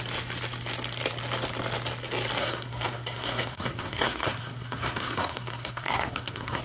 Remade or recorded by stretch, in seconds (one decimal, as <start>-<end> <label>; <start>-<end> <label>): 0.0-2.4 recorded; 2.4-6.6 remade